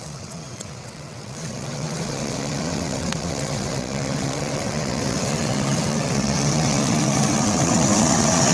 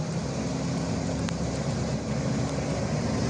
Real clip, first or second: second